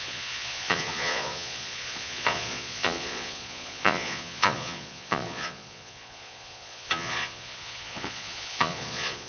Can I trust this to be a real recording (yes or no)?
no